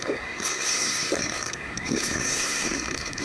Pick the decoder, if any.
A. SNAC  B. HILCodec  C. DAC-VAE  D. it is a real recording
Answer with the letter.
A